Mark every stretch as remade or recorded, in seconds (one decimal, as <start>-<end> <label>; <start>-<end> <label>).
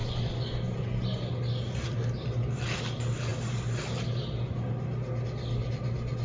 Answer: 0.0-6.2 recorded